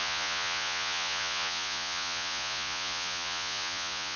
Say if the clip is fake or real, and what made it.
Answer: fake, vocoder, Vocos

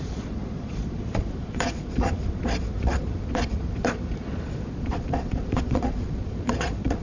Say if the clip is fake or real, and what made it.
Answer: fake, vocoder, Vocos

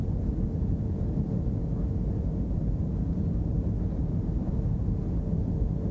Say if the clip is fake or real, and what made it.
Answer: real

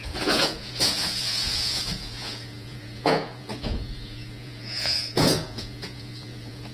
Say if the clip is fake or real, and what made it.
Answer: fake, vocoder, Vocos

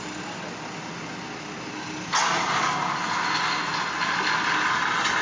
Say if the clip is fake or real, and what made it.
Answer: real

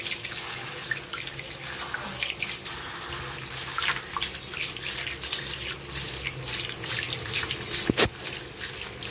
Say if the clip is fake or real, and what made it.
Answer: real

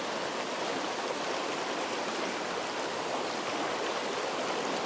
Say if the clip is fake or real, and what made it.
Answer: real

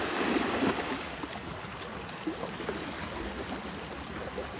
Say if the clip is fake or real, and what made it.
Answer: real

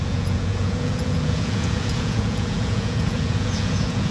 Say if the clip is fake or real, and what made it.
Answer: fake, vocoder, Vocos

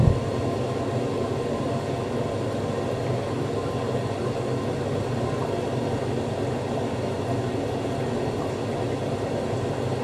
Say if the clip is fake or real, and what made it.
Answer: real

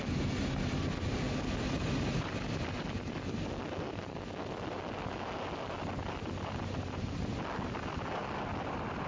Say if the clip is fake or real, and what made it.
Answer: real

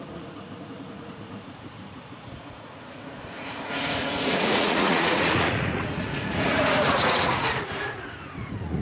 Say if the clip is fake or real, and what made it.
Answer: fake, vocoder, Vocos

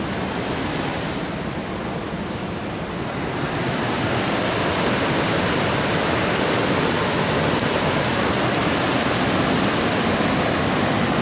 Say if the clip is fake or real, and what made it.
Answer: real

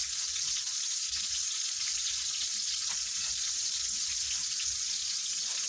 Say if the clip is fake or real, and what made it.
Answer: fake, vocoder, Vocos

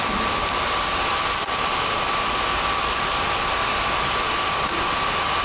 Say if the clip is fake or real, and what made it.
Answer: real